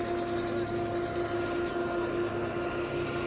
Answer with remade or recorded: recorded